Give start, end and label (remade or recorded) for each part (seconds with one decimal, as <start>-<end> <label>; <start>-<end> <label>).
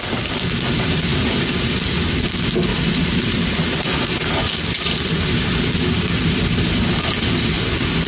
0.0-2.7 recorded; 2.7-4.4 remade; 4.4-8.1 recorded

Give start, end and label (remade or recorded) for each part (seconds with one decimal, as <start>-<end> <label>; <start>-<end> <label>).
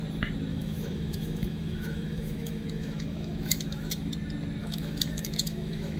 0.0-0.5 recorded; 0.5-4.1 remade; 4.1-4.6 recorded; 4.6-6.0 remade